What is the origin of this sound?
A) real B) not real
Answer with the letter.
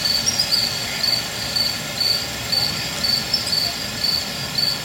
A